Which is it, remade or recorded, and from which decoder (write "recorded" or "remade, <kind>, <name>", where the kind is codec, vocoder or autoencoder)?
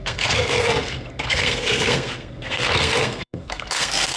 remade, codec, SNAC